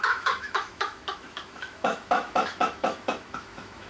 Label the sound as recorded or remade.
remade